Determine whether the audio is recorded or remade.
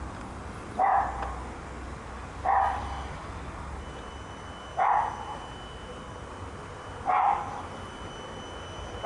recorded